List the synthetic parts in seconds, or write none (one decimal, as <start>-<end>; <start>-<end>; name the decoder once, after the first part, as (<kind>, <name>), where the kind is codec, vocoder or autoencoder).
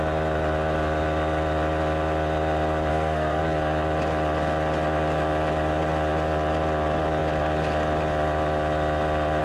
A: 2.9-3.4 (codec, SNAC)